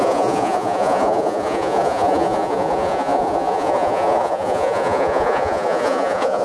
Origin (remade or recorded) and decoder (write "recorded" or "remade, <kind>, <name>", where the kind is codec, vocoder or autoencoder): remade, vocoder, Vocos